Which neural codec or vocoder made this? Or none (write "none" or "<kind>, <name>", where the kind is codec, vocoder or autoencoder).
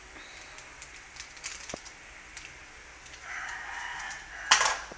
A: none